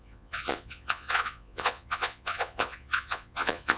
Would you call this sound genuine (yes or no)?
no